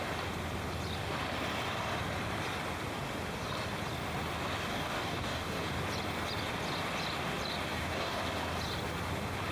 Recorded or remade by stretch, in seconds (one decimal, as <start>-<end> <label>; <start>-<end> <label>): 0.0-4.7 recorded; 4.7-5.8 remade; 5.8-7.7 recorded; 7.7-8.2 remade; 8.2-9.5 recorded